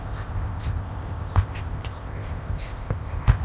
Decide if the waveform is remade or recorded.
remade